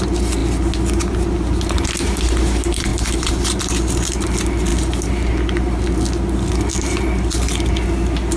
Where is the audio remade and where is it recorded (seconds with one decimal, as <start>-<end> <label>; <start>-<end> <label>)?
0.0-8.4 recorded